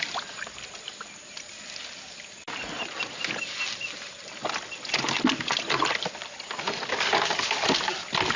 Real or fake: real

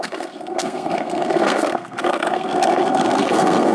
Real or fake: fake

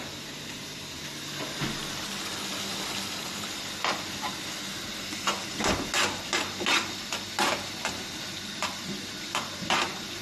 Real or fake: real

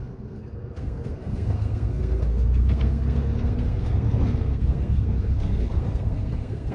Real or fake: fake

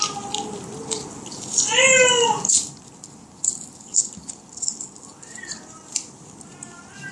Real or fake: real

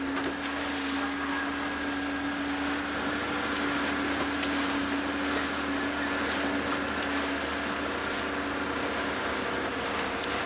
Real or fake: real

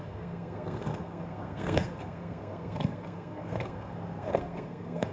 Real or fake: fake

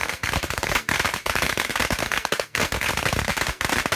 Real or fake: fake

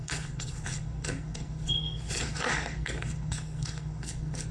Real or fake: fake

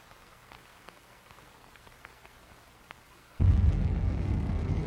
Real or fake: fake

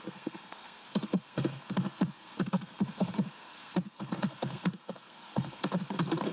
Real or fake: fake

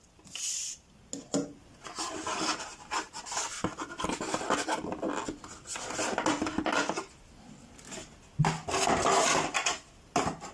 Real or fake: real